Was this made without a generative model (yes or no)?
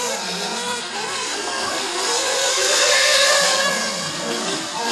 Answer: no